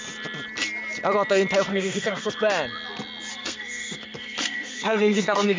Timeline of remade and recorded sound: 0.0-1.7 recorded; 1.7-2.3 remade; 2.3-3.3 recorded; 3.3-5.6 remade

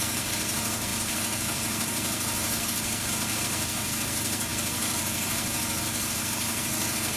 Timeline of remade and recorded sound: 0.0-7.2 remade

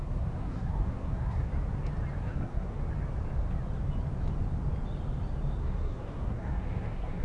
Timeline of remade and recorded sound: 0.0-1.5 remade; 1.5-2.2 recorded; 2.2-2.8 remade; 2.8-5.6 recorded; 5.6-7.2 remade

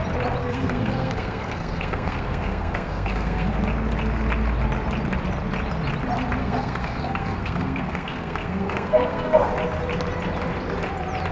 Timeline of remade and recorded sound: 0.0-0.4 recorded; 0.4-3.5 remade; 3.5-6.4 recorded; 6.4-9.5 remade; 9.5-11.3 recorded

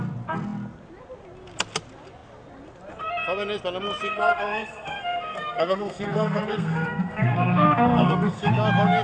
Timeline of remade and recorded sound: 0.0-4.1 recorded; 4.1-8.5 remade; 8.5-9.0 recorded

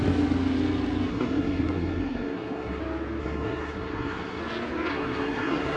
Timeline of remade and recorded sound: 0.0-1.1 recorded; 1.1-2.8 remade; 2.8-3.2 recorded; 3.2-4.4 remade; 4.4-4.9 recorded; 4.9-5.8 remade

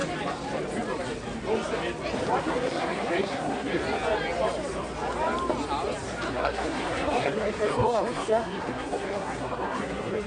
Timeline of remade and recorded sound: 0.0-2.4 recorded; 2.4-3.8 remade; 3.8-6.3 recorded; 6.3-10.3 remade

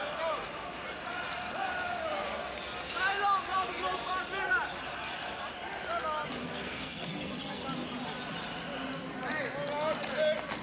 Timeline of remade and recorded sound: 0.0-6.4 recorded; 6.4-7.6 remade; 7.6-10.6 recorded